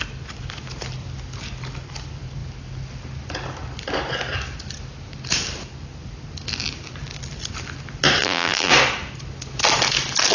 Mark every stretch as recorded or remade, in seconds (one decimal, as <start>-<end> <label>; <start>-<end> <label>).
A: 0.0-8.2 recorded; 8.2-8.7 remade; 8.7-10.3 recorded

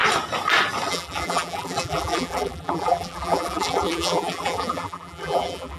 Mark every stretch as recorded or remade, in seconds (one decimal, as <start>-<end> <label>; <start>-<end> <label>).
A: 0.0-0.9 recorded; 0.9-5.8 remade

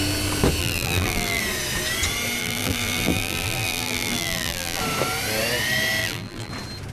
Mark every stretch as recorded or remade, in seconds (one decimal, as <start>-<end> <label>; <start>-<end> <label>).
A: 0.0-0.6 recorded; 0.6-1.4 remade; 1.4-2.4 recorded; 2.4-4.8 remade; 4.8-6.0 recorded; 6.0-6.5 remade; 6.5-6.9 recorded

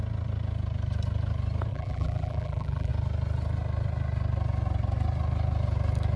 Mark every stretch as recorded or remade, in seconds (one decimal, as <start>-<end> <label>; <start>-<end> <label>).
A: 0.0-1.7 recorded; 1.7-2.9 remade; 2.9-6.2 recorded

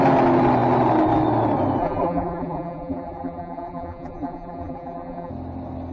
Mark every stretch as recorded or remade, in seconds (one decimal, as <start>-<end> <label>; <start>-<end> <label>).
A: 0.0-1.8 recorded; 1.8-5.3 remade; 5.3-5.9 recorded